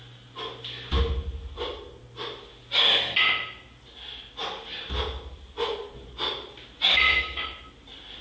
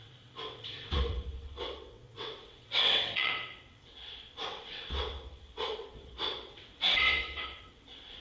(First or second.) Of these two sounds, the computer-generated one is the second